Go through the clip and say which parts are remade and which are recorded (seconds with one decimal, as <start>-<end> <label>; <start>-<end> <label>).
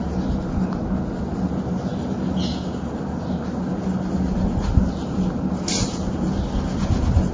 0.0-7.3 recorded